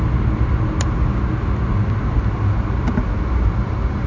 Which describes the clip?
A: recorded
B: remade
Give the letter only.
A